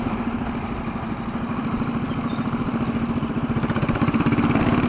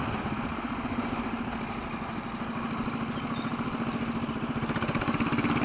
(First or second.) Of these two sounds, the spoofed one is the first